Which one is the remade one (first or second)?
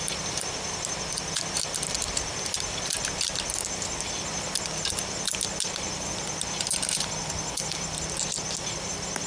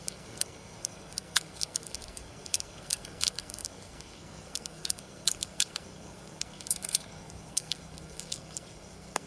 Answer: second